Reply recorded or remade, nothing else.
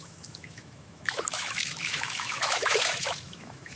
remade